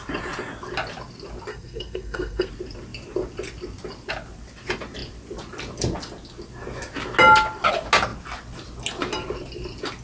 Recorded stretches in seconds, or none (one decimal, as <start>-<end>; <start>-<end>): 0.0-1.5; 2.5-10.0